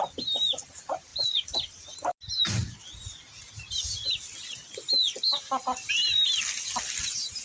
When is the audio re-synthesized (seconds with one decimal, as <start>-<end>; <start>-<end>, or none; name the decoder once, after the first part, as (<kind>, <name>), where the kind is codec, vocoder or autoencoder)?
none